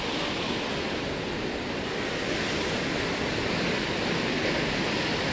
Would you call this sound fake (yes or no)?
no